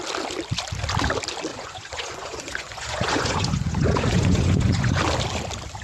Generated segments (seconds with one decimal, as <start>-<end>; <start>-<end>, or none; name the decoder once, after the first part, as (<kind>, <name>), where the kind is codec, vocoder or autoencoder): 1.5-5.0 (vocoder, Vocos)